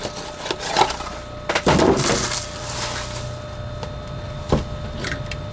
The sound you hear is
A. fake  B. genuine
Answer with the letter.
B